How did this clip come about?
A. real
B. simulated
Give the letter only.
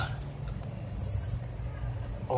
A